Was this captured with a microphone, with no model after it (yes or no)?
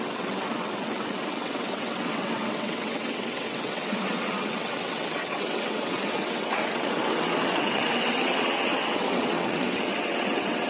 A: no